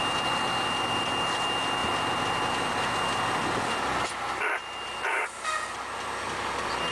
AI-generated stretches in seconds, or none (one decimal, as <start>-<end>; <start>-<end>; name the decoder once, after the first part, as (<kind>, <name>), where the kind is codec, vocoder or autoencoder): none